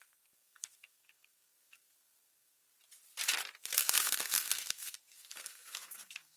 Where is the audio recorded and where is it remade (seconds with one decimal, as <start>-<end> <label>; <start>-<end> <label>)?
0.0-2.7 remade; 2.7-3.6 recorded; 3.6-6.4 remade